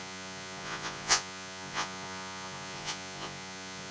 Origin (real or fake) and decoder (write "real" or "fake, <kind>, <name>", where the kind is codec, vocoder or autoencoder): fake, vocoder, Vocos